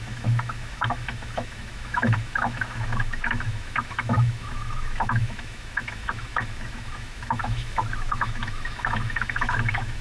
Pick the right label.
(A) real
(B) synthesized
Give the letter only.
B